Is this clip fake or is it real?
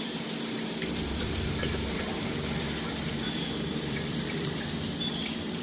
fake